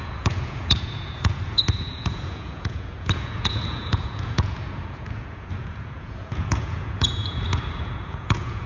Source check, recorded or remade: remade